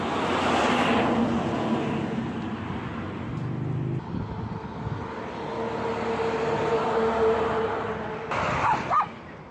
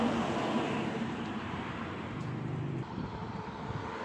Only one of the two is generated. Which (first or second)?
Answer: second